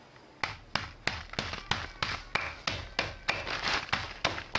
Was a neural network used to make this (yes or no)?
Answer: no